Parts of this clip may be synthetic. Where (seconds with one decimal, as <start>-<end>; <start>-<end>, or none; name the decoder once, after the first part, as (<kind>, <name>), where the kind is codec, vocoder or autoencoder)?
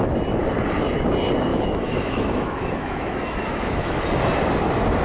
1.5-4.0 (autoencoder, DAC-VAE)